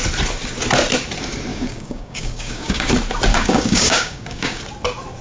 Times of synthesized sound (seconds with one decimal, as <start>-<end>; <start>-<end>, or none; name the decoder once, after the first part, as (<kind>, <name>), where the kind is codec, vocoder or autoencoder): 1.5-2.9 (codec, DAC); 3.3-4.6